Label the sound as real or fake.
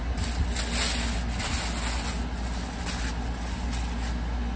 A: real